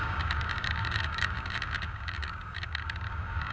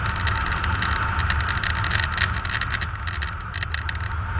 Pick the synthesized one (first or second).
first